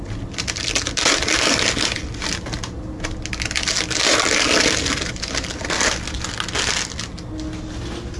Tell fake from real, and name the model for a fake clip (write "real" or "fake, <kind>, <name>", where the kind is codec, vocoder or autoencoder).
real